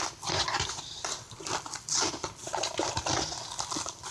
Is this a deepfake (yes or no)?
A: yes